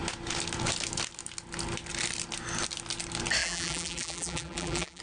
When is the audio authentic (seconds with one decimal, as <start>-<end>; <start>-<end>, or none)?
0.0-3.4